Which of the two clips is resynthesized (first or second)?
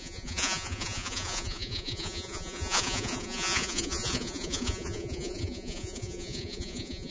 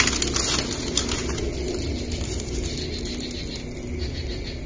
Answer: first